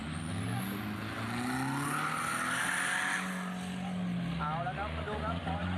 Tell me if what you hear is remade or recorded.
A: recorded